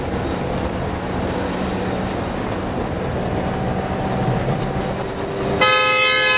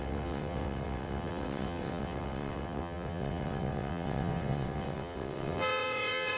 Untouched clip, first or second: first